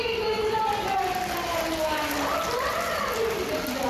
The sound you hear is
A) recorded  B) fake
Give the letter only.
A